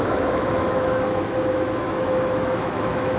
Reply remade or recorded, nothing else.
remade